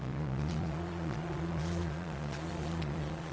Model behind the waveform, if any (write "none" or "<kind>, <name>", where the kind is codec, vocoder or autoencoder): vocoder, Vocos